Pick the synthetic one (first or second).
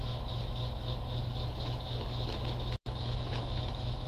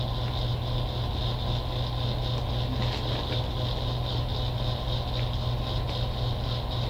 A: first